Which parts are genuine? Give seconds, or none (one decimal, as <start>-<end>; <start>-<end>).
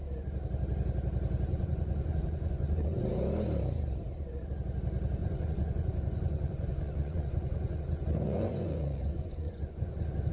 0.0-1.5; 3.0-5.2